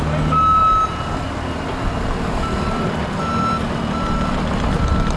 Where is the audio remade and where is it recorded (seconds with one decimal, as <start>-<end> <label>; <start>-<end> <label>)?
0.0-5.2 recorded